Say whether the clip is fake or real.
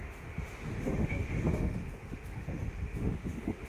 fake